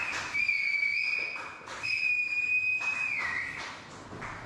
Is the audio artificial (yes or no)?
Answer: no